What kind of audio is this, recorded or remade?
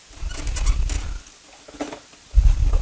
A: recorded